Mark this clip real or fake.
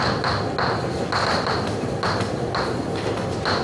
real